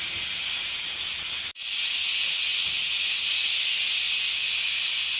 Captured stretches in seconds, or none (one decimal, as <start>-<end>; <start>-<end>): 0.0-5.2